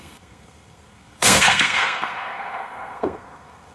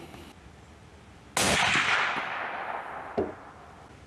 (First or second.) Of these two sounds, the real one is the second